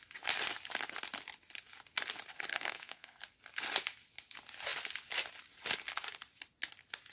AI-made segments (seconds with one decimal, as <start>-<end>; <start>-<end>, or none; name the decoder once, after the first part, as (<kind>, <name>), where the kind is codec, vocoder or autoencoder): 2.5-3.2 (codec, SNAC)